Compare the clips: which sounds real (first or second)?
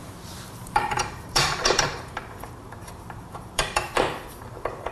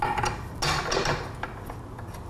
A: second